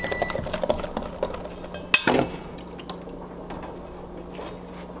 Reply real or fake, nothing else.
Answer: real